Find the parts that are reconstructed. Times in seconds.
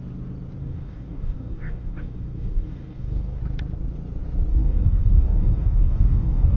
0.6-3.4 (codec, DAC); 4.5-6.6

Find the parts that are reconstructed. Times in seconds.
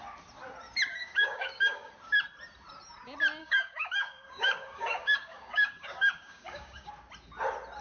1.0-1.9 (codec, DAC); 3.4-6.9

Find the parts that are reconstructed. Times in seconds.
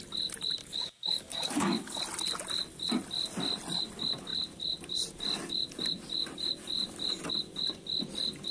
0.6-2.0 (codec, DAC)